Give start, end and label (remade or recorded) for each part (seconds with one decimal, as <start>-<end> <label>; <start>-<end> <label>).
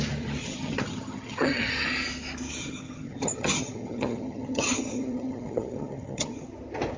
0.0-0.4 recorded; 0.4-1.7 remade; 1.7-2.6 recorded; 2.6-6.5 remade; 6.5-7.0 recorded